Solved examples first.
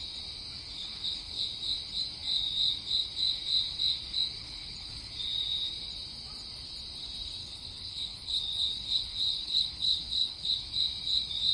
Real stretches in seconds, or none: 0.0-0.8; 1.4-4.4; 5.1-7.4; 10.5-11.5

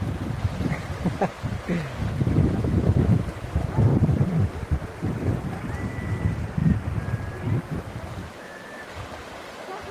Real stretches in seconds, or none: 0.0-2.4; 3.2-8.2; 8.8-9.9

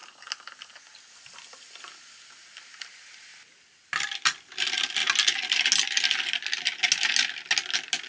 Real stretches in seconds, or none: 0.0-8.1

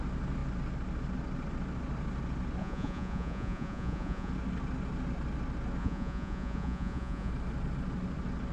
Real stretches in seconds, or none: 0.0-2.6; 4.3-5.8; 7.3-8.5

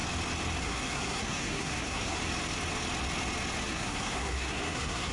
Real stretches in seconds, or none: 0.0-0.6; 2.2-3.7

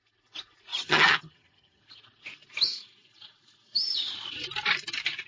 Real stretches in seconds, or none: 0.0-0.7; 1.8-5.3

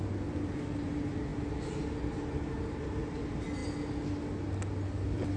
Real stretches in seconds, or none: 0.0-5.4